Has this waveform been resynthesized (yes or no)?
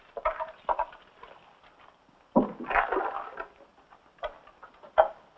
no